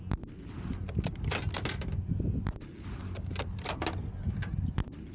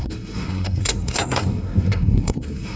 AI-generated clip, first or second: second